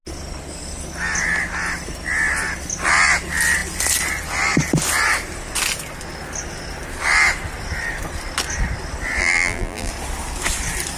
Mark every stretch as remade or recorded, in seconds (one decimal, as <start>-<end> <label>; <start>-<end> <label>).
0.0-9.2 recorded; 9.2-9.9 remade; 9.9-11.0 recorded